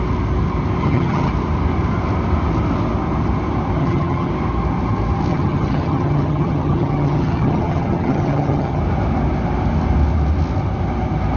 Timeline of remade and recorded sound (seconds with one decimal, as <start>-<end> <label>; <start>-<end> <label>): 0.0-0.8 recorded; 0.8-1.3 remade; 1.3-3.8 recorded; 3.8-4.3 remade; 4.3-5.3 recorded; 5.3-8.8 remade; 8.8-11.4 recorded